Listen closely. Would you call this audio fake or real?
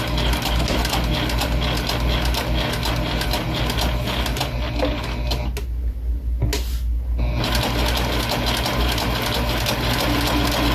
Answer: real